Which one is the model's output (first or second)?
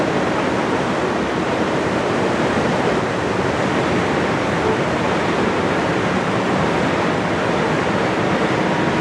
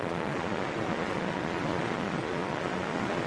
second